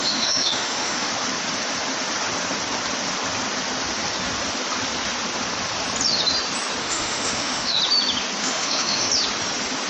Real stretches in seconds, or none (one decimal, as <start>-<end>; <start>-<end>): 1.1-6.8; 7.8-8.4; 9.1-9.9